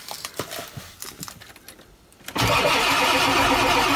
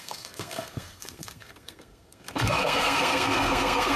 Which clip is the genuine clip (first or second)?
first